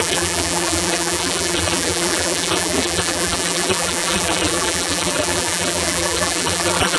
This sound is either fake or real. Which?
fake